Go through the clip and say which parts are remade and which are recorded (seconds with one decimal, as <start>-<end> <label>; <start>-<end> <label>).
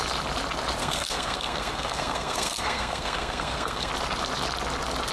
0.0-0.8 recorded; 0.8-3.9 remade; 3.9-5.1 recorded